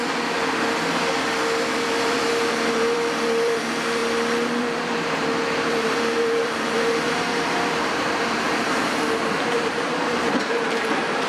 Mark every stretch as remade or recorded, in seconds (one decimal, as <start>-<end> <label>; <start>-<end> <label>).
0.0-1.6 recorded; 1.6-4.0 remade; 4.0-4.6 recorded; 4.6-11.3 remade